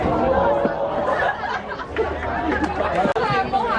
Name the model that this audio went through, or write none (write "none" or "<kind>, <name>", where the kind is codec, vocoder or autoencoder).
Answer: none